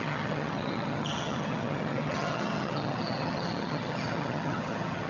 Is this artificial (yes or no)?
yes